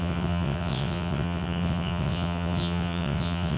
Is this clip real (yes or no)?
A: no